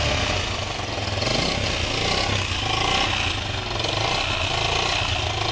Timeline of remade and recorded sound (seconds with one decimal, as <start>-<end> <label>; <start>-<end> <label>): 0.0-5.5 recorded